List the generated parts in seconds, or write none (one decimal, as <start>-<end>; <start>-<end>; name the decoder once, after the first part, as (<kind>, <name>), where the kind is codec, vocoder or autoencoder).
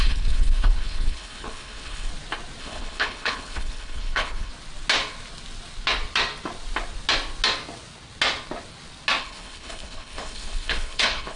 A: 0.0-2.1 (codec, HILCodec); 2.6-4.5; 9.2-11.4